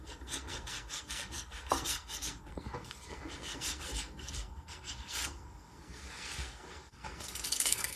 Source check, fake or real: fake